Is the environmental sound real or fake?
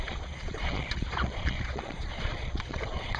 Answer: fake